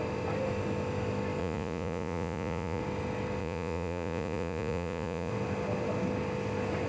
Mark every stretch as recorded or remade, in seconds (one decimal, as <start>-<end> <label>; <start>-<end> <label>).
0.0-1.4 recorded; 1.4-2.8 remade; 2.8-3.4 recorded; 3.4-5.3 remade; 5.3-6.9 recorded